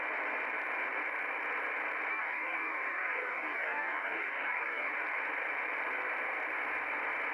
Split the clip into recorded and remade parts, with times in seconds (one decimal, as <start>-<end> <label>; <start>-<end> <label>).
0.0-2.1 recorded; 2.1-4.9 remade; 4.9-7.3 recorded